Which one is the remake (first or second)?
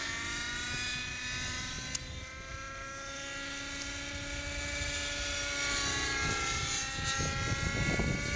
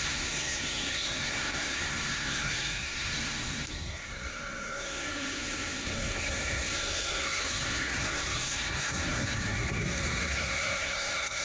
second